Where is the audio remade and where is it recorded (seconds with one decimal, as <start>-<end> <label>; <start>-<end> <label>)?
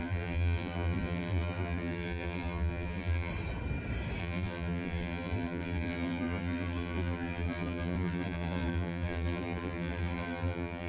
0.0-3.3 remade; 3.3-4.2 recorded; 4.2-10.9 remade